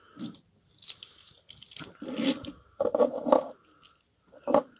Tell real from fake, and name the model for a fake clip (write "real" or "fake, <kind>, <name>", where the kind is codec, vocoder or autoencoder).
real